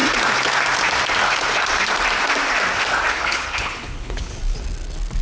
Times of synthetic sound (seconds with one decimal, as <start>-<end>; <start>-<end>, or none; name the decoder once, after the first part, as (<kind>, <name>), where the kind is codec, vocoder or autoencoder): 3.1-4.3 (codec, HILCodec)